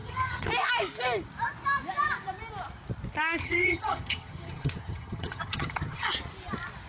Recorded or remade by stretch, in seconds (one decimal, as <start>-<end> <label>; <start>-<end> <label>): 0.0-0.5 remade; 0.5-3.4 recorded; 3.4-6.1 remade; 6.1-6.9 recorded